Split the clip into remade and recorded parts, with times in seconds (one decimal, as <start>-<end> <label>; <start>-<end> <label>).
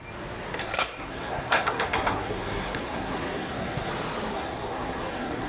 0.0-0.6 recorded; 0.6-3.9 remade; 3.9-4.3 recorded; 4.3-5.5 remade